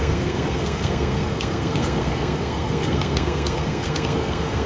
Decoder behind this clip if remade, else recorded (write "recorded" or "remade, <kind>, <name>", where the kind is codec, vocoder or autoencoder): remade, codec, SNAC